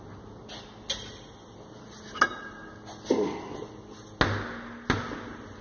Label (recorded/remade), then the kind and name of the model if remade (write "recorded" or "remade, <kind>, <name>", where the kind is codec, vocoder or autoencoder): recorded